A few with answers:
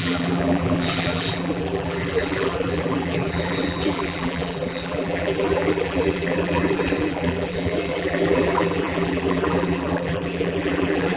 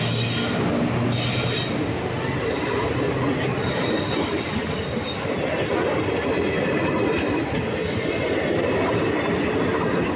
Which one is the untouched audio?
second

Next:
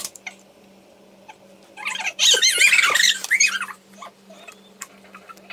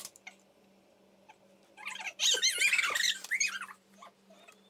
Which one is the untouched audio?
second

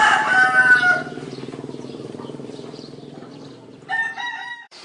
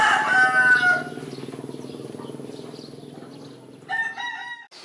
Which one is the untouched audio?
second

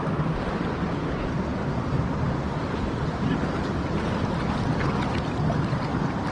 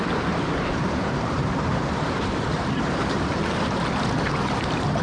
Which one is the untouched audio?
first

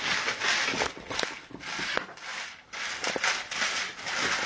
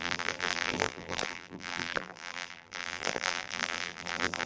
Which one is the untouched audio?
first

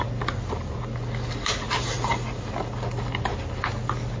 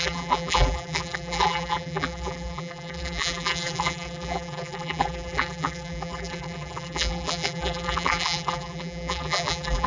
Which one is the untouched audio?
first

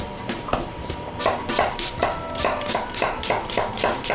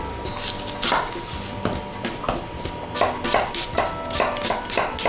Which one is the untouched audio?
second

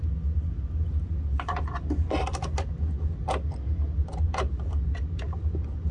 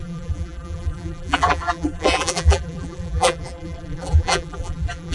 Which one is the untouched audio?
first